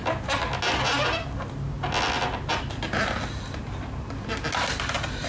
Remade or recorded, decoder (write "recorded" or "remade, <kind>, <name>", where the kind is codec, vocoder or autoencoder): recorded